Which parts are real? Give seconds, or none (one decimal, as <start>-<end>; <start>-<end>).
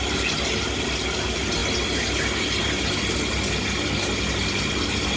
0.0-5.2